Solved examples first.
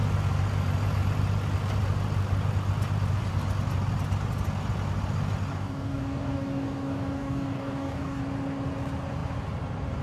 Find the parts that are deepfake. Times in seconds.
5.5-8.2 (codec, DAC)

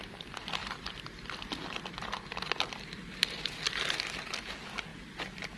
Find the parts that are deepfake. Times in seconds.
0.6-4.0 (vocoder, BigVGAN v2); 4.9-5.6

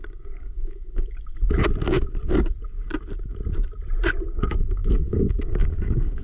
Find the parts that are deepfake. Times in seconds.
0.0-1.3 (codec, DAC); 4.3-6.2

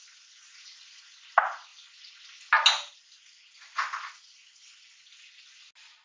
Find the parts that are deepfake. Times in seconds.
none

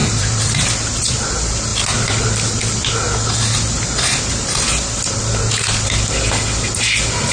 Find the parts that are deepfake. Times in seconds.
0.0-1.2 (vocoder, BigVGAN v2)

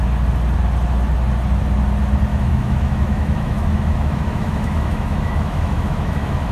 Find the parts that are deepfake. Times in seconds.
2.3-6.5 (autoencoder, DAC-VAE)

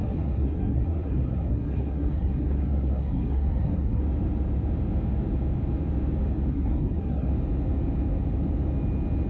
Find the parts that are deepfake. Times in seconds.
0.0-4.0 (codec, SNAC); 6.5-7.3

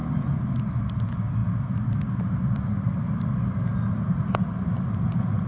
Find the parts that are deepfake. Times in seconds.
none